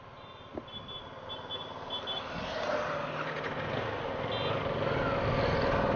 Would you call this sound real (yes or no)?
yes